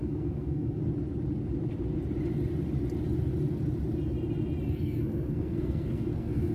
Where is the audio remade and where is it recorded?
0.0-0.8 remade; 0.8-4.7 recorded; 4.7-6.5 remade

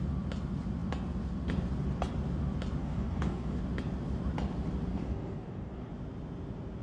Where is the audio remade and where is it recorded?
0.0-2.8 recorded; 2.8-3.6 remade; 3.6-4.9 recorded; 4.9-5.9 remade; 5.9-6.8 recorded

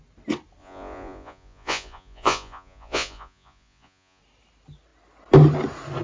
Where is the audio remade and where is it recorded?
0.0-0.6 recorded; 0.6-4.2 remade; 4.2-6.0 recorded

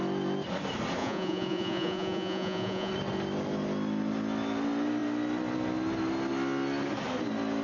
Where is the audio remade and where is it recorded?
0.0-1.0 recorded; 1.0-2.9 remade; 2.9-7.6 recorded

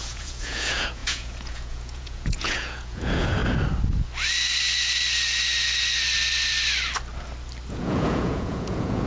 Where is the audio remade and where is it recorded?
0.0-3.4 remade; 3.4-7.7 recorded; 7.7-9.1 remade

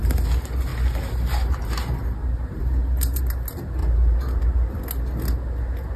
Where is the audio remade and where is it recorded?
0.0-0.7 recorded; 0.7-3.2 remade; 3.2-3.8 recorded; 3.8-4.4 remade; 4.4-6.0 recorded

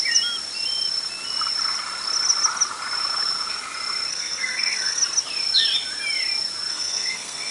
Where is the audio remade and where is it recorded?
0.0-4.1 recorded; 4.1-5.0 remade; 5.0-6.7 recorded; 6.7-7.5 remade